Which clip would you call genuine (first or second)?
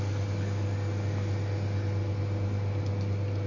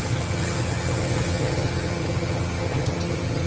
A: first